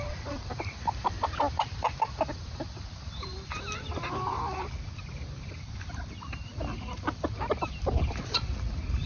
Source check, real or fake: fake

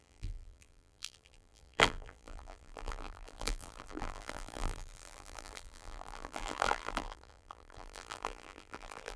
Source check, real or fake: fake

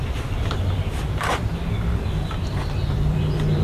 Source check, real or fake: fake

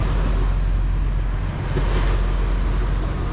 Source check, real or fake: real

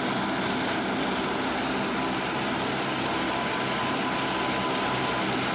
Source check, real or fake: real